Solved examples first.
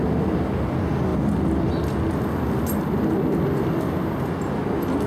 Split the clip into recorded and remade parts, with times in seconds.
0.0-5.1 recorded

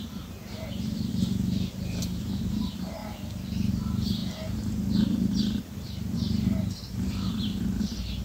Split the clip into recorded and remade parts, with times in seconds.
0.0-1.1 remade; 1.1-1.7 recorded; 1.7-3.0 remade; 3.0-3.7 recorded; 3.7-4.2 remade; 4.2-5.6 recorded; 5.6-8.2 remade

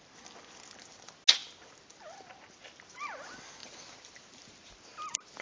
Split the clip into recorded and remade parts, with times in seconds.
0.0-3.6 recorded; 3.6-4.8 remade; 4.8-5.4 recorded

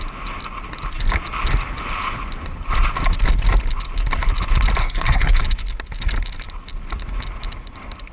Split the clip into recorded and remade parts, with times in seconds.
0.0-4.8 recorded; 4.8-5.4 remade; 5.4-8.1 recorded